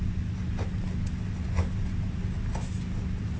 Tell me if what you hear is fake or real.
real